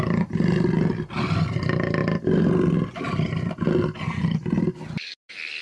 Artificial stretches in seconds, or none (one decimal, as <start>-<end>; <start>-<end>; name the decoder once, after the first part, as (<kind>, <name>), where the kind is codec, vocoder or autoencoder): none